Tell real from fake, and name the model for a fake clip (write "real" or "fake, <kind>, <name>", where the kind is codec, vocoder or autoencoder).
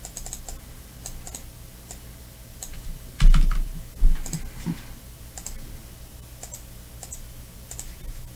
real